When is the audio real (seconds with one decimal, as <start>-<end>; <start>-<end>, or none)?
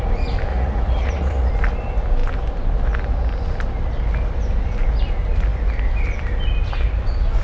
0.0-0.5; 1.5-7.4